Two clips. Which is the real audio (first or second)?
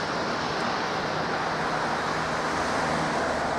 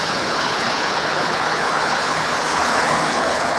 first